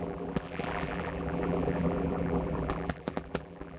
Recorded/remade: remade